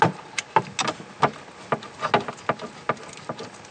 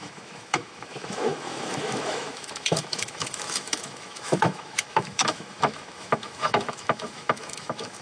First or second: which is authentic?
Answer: first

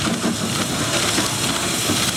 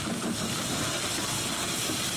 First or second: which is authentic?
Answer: first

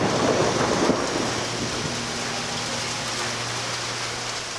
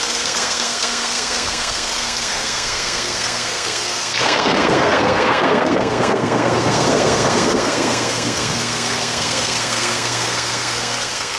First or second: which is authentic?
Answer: first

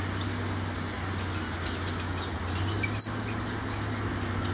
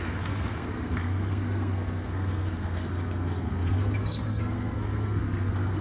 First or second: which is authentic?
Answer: first